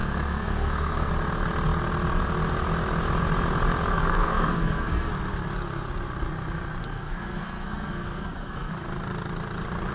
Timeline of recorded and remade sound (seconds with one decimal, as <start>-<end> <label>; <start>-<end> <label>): 0.0-1.1 remade; 1.1-3.9 recorded; 3.9-5.1 remade; 5.1-6.8 recorded; 6.8-8.7 remade; 8.7-9.9 recorded